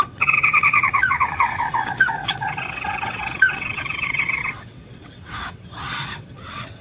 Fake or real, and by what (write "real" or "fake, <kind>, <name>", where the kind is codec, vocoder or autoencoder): fake, vocoder, WaveNeXt